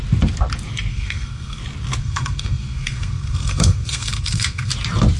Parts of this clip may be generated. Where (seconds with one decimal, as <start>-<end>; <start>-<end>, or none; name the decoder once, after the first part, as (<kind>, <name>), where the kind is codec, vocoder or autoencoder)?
0.9-1.6 (codec, SNAC); 2.0-4.7